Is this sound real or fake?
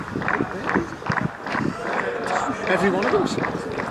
real